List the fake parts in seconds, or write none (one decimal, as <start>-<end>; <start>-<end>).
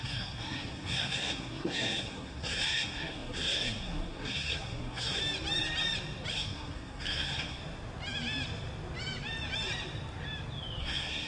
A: 0.0-5.2; 6.3-7.6; 10.8-11.3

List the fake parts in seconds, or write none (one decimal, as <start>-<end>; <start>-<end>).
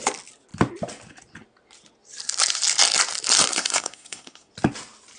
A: 3.5-4.5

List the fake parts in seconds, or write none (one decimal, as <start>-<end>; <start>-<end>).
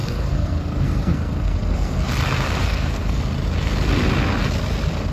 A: 0.0-2.1; 2.6-3.2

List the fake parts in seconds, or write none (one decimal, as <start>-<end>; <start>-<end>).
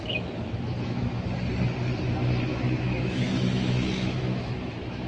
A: 0.0-1.2; 2.5-5.1